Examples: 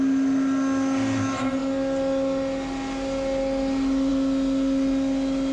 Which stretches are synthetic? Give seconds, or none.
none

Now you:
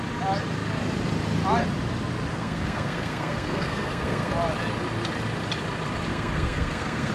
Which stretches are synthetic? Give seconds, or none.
2.3-4.3 (codec, SNAC); 6.1-7.1

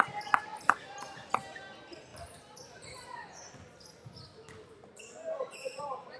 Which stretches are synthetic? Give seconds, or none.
0.5-1.3 (vocoder, BigVGAN v2); 2.1-5.8